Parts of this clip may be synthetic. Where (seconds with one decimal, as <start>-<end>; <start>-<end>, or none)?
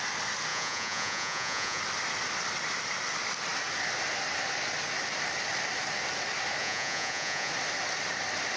0.5-1.8; 6.6-7.5